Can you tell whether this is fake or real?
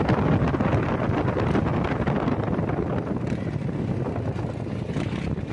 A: real